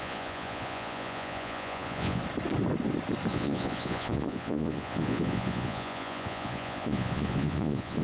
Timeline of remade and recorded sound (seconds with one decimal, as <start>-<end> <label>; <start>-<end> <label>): 0.0-2.2 remade; 2.2-3.3 recorded; 3.3-8.0 remade